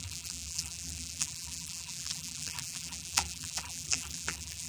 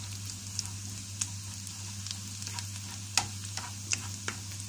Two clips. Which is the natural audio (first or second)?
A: second